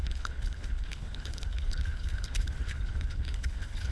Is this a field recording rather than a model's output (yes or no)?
no